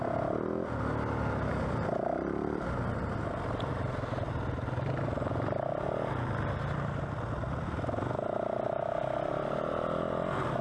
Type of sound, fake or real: real